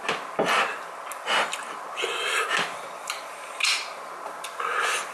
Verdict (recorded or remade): recorded